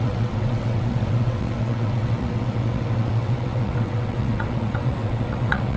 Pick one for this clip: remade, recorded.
remade